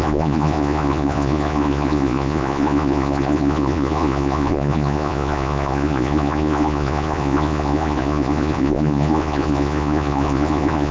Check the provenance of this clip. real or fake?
fake